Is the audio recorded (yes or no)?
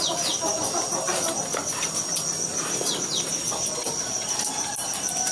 yes